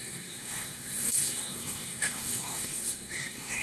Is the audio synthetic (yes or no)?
yes